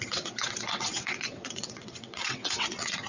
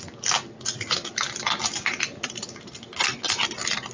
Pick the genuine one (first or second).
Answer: second